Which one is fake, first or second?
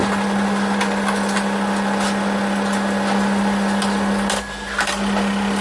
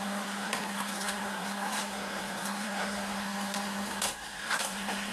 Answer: second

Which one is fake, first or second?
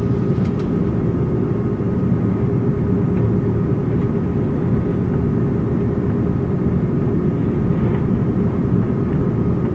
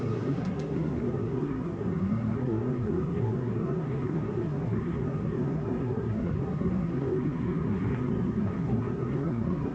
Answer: second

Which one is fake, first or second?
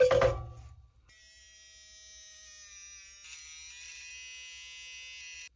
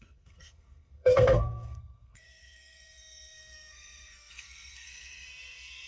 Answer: second